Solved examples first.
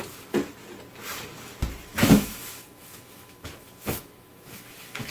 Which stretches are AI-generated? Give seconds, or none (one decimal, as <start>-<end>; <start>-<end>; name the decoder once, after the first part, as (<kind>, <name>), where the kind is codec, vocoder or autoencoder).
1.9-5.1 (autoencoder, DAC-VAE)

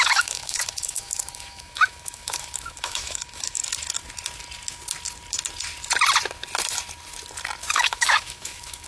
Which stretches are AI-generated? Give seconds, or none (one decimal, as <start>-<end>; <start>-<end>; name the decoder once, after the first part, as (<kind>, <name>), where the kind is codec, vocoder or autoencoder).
0.0-3.6 (autoencoder, DAC-VAE); 7.7-8.9

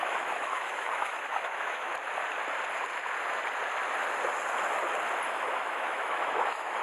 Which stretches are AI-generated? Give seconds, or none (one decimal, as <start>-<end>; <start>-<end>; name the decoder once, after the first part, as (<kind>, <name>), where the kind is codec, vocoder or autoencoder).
0.0-1.9 (autoencoder, DAC-VAE); 5.3-6.8